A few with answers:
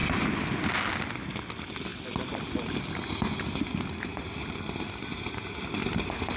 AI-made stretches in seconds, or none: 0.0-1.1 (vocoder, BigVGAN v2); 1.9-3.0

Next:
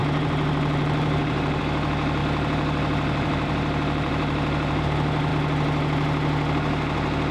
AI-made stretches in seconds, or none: 0.0-1.6 (vocoder, BigVGAN v2); 2.2-4.8

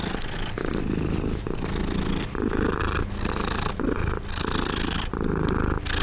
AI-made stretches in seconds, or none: none

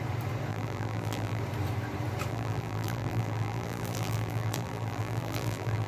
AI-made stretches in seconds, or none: 0.5-1.4 (vocoder, BigVGAN v2); 2.3-5.9

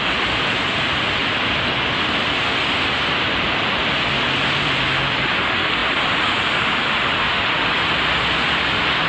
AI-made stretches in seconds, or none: 1.2-5.2 (vocoder, BigVGAN v2); 5.8-6.4

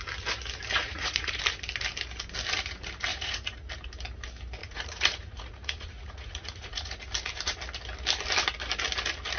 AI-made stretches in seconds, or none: 0.8-1.4 (vocoder, Vocos); 3.1-3.7; 4.6-7.0

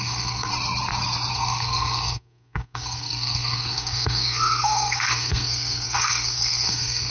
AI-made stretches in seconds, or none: 0.0-0.5 (codec, SNAC); 1.3-7.1

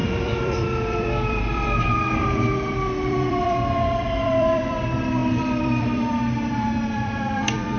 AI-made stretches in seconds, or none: 0.0-7.8 (vocoder, BigVGAN v2)